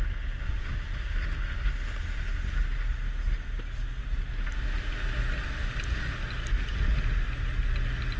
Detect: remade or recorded recorded